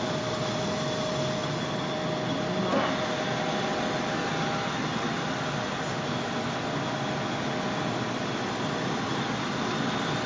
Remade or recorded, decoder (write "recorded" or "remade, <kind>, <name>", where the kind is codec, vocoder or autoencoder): recorded